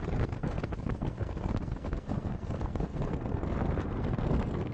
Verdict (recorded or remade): remade